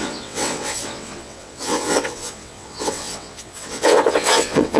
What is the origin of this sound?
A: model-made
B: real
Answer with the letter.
A